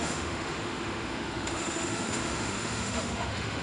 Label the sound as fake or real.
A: fake